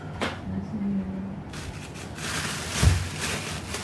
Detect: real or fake real